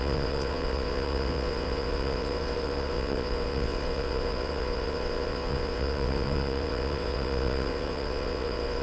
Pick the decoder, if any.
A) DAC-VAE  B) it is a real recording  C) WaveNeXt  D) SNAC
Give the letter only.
C